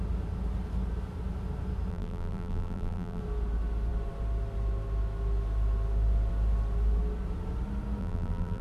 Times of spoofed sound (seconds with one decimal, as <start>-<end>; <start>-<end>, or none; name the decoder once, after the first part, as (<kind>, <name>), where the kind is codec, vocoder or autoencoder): 1.9-3.2 (vocoder, BigVGAN v2); 8.0-8.6